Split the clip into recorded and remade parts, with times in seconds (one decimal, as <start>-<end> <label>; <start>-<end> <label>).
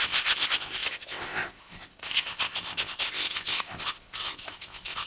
0.0-5.1 remade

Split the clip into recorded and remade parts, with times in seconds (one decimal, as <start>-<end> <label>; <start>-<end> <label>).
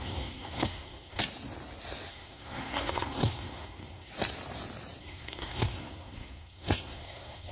0.0-1.2 remade; 1.2-2.1 recorded; 2.1-4.1 remade; 4.1-5.0 recorded; 5.0-7.5 remade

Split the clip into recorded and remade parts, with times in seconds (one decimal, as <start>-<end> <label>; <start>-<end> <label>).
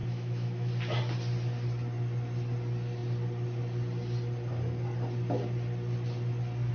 0.0-0.7 remade; 0.7-6.7 recorded